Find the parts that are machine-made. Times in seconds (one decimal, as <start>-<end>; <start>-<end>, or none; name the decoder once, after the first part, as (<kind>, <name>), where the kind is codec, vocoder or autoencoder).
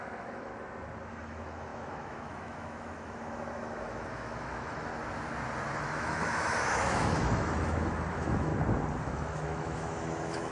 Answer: 0.0-0.5 (autoencoder, DAC-VAE); 1.1-4.9; 5.8-8.5; 9.0-10.5